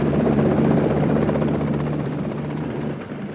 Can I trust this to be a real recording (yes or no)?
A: no